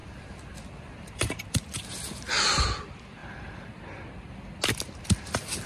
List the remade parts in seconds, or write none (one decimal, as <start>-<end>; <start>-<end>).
0.0-1.8; 3.2-3.8

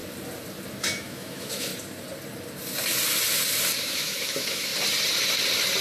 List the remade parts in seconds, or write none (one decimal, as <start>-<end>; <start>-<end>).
0.8-1.7; 3.8-4.7

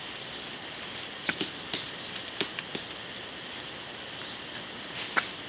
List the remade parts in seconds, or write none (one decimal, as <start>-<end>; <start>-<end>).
none

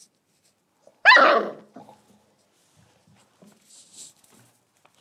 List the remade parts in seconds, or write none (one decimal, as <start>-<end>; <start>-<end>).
none

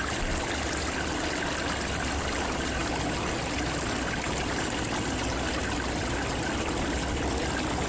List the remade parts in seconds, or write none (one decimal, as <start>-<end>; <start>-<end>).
none

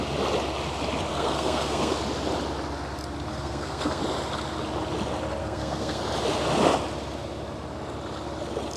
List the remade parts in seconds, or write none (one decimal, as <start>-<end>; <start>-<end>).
1.1-1.9; 3.3-4.0; 5.4-6.0